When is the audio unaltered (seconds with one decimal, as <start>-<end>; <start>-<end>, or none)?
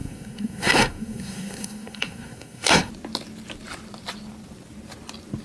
2.9-5.4